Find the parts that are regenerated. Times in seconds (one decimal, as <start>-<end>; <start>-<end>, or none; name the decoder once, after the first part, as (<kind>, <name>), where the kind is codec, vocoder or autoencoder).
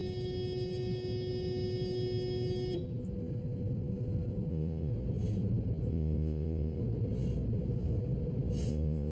4.5-4.9 (vocoder, Vocos); 5.9-6.8; 8.7-9.1